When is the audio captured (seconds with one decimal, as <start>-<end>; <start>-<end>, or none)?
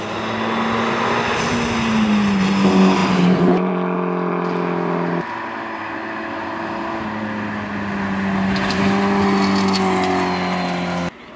0.0-3.0; 3.7-11.4